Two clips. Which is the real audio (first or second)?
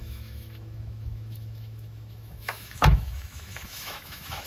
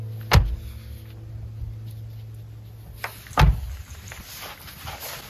second